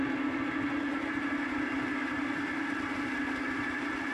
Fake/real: real